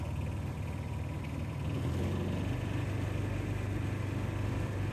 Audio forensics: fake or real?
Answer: real